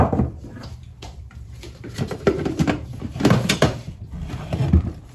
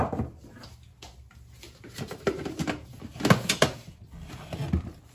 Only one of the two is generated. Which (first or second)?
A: first